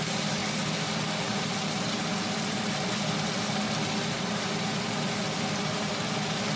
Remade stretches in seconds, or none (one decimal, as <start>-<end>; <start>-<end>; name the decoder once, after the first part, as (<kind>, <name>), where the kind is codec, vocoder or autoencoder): none